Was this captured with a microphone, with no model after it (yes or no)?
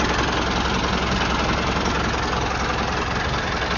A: yes